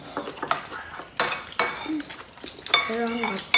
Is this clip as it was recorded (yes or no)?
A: yes